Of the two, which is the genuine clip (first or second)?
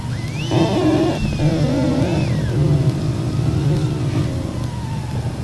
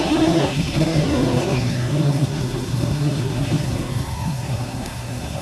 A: first